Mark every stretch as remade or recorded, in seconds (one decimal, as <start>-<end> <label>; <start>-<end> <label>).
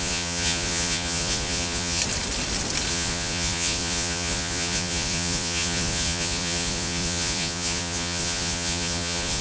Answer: 0.0-2.0 remade; 2.0-2.9 recorded; 2.9-9.4 remade